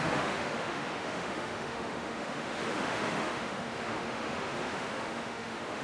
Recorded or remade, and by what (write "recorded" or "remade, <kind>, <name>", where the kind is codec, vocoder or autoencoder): remade, autoencoder, DAC-VAE